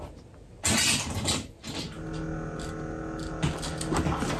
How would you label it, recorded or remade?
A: recorded